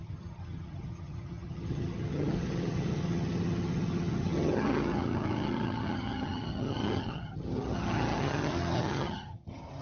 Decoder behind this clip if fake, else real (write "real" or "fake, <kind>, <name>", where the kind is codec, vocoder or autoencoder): fake, vocoder, HiFi-GAN